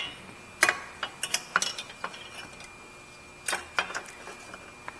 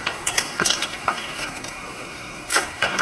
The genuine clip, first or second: first